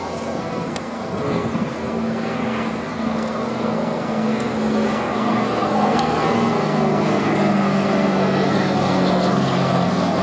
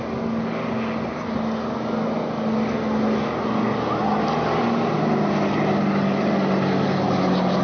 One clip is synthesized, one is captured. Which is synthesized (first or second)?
first